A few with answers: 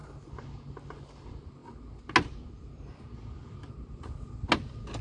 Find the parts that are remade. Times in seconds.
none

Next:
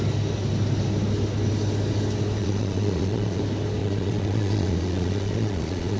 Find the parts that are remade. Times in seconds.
2.4-3.4; 3.8-6.0

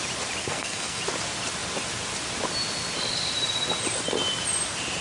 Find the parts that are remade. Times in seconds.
0.4-1.0

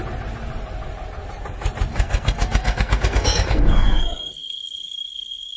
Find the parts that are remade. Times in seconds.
1.9-5.6

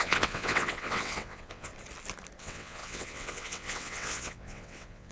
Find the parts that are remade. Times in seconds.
0.0-1.7; 2.4-5.1

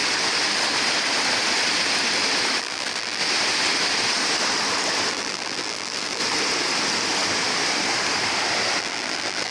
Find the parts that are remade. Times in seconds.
2.6-3.2; 5.1-6.2; 8.8-9.5